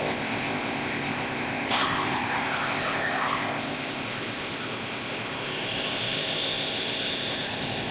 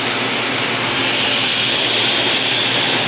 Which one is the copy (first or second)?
first